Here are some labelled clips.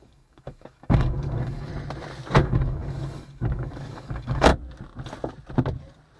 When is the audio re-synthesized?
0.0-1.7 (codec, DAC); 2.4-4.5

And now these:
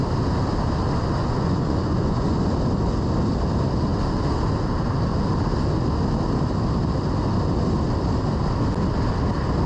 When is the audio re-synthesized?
1.2-2.4 (vocoder, Vocos)

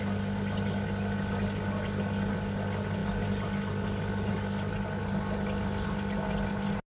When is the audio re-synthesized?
none